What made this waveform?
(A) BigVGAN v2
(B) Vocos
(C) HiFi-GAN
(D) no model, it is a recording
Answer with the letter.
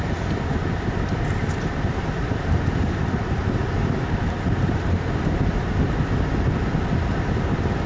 D